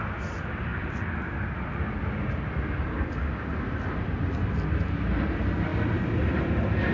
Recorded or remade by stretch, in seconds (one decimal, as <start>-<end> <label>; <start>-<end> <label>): 0.0-6.9 recorded